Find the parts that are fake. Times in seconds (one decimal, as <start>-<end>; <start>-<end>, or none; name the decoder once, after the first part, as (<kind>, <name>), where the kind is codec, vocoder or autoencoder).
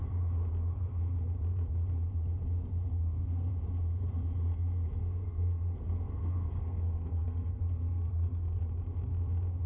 2.9-3.5 (codec, SNAC); 5.0-8.6